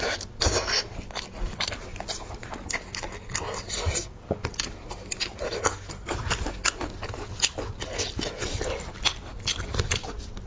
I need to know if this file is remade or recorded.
recorded